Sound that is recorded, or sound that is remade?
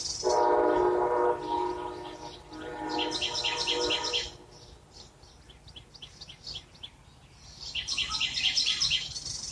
recorded